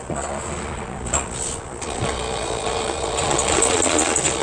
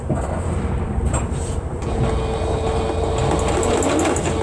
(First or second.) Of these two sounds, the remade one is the first